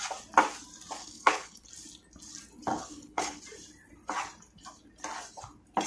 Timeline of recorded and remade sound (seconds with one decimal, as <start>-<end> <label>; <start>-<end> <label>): 0.0-1.0 recorded; 1.0-1.7 remade; 1.7-2.7 recorded; 2.7-3.4 remade; 3.4-5.9 recorded